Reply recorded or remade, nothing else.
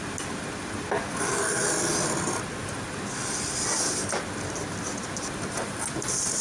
recorded